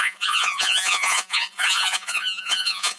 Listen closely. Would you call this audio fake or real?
fake